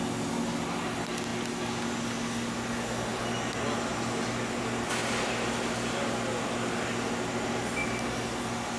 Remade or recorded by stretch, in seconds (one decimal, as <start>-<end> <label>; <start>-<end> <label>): 0.0-8.8 recorded